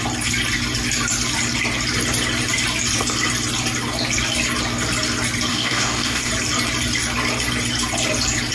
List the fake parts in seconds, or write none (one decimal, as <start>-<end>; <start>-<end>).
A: 5.5-6.3